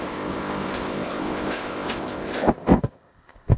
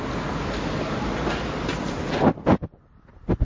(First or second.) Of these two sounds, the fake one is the first